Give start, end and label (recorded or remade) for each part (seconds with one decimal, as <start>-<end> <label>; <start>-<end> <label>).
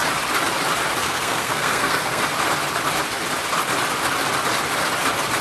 0.0-1.0 recorded; 1.0-2.2 remade; 2.2-5.4 recorded